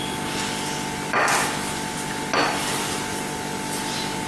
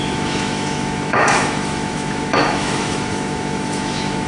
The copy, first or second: second